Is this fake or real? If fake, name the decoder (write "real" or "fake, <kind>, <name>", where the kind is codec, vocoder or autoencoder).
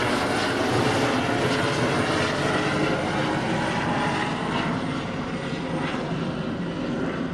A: real